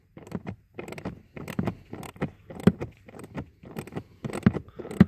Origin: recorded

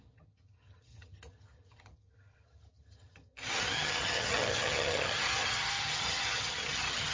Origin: remade